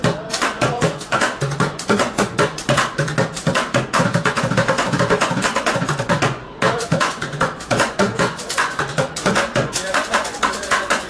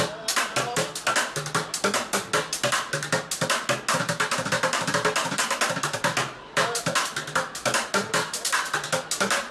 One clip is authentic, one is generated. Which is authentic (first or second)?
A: second